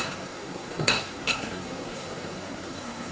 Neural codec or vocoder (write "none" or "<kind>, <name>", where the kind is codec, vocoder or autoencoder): codec, SNAC